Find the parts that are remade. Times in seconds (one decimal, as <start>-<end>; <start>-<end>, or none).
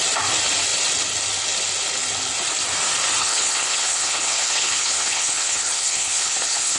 3.2-6.8